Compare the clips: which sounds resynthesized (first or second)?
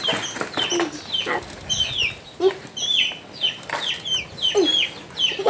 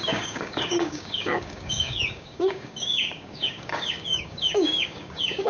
second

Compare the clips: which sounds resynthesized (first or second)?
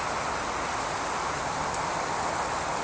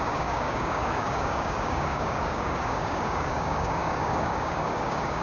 second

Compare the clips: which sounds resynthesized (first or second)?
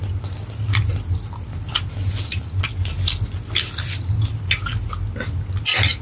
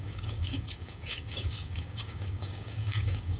second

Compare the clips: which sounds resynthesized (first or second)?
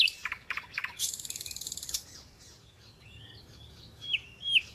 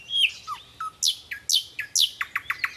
first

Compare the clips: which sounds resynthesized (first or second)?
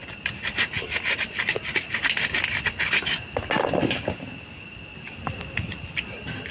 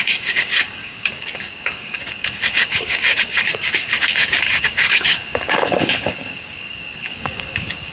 second